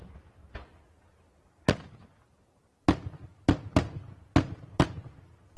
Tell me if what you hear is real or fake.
real